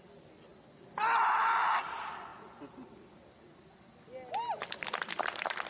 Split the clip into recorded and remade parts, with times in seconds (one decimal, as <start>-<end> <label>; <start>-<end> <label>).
0.0-5.7 recorded